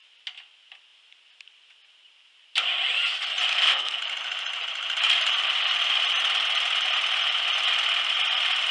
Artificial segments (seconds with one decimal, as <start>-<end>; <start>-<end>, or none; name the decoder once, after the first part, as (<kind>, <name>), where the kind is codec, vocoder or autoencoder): 3.5-4.0 (codec, SNAC)